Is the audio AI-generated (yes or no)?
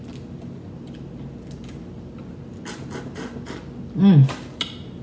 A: no